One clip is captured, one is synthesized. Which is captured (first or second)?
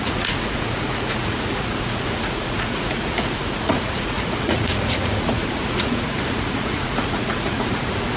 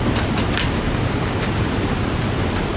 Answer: second